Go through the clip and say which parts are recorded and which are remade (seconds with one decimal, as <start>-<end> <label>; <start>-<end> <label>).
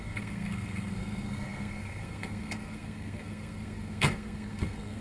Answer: 0.0-5.0 remade